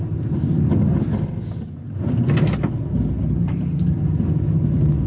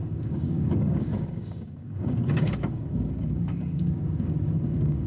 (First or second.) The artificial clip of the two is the second